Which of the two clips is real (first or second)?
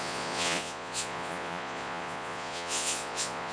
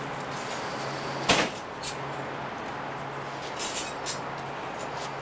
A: second